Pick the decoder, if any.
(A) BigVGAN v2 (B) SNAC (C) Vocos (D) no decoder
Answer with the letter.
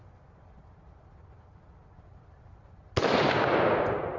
D